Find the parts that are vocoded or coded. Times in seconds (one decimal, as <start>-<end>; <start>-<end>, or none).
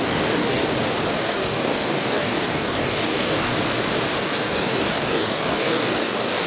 0.0-0.6; 1.2-3.5; 4.2-6.5